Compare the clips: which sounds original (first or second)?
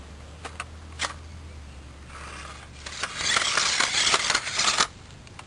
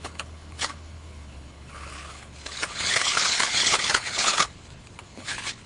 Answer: first